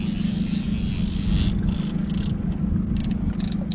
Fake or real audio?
real